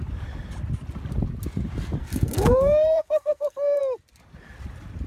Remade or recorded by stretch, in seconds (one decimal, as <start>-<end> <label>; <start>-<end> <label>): 0.0-2.0 recorded; 2.0-3.8 remade; 3.8-5.1 recorded